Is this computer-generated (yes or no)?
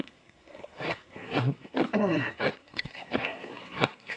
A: yes